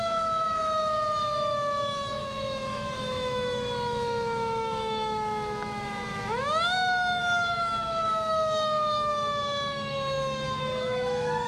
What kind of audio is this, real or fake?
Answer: fake